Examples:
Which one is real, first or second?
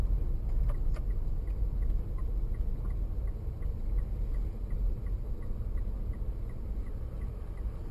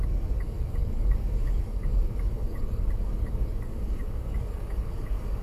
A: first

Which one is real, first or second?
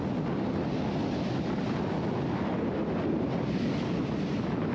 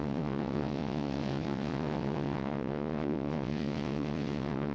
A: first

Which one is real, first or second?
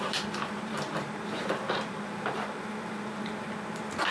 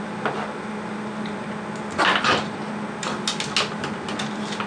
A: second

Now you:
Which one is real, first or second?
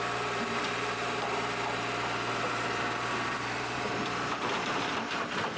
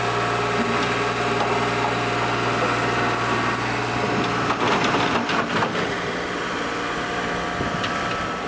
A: second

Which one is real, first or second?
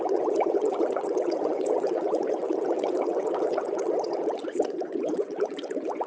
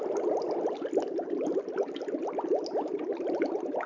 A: second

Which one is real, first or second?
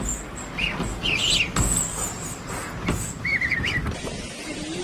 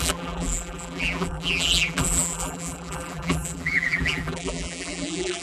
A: first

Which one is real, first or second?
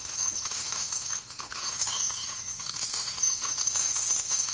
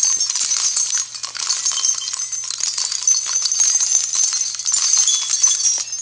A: second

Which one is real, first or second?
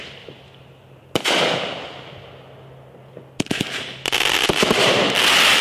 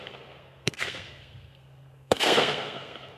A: first